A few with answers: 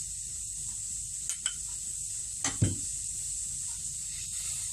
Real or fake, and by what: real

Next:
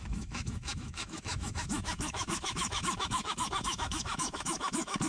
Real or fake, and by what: fake, autoencoder, DAC-VAE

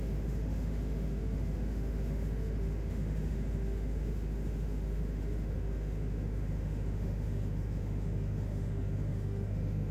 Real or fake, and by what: fake, autoencoder, DAC-VAE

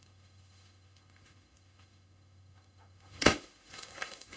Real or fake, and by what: fake, autoencoder, DAC-VAE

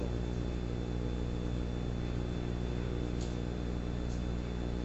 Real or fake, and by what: real